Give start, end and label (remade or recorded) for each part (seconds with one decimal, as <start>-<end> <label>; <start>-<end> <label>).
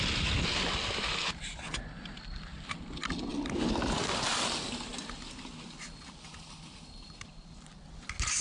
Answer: 0.0-8.4 recorded